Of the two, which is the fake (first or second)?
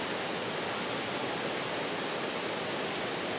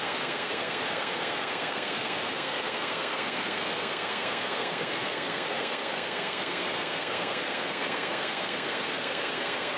second